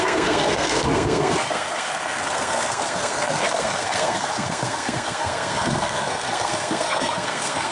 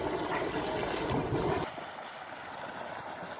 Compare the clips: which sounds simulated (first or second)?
first